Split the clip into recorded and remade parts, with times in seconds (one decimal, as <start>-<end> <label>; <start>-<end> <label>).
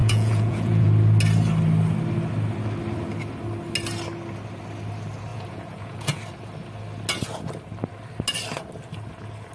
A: 0.0-0.9 remade; 0.9-5.3 recorded; 5.3-6.2 remade; 6.2-9.5 recorded